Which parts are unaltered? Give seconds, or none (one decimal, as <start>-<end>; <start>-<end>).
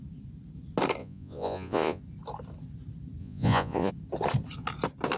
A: 0.0-1.0; 2.0-3.2; 3.9-5.2